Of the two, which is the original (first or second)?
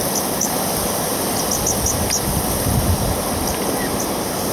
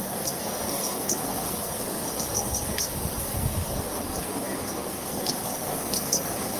first